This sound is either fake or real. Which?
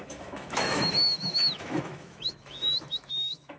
fake